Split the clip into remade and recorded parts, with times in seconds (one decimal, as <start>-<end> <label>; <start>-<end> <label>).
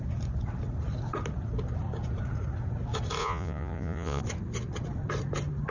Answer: 0.0-3.2 recorded; 3.2-4.2 remade; 4.2-5.7 recorded